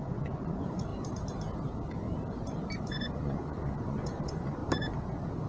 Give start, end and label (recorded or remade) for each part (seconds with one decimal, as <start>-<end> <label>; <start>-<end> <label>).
0.0-0.9 remade; 0.9-2.8 recorded; 2.8-4.6 remade; 4.6-5.5 recorded